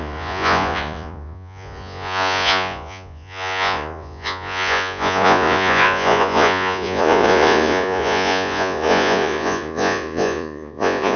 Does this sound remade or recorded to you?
remade